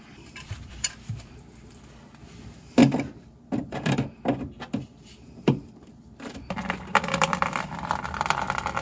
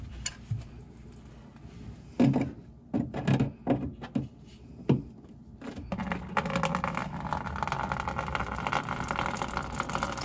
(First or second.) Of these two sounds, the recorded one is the second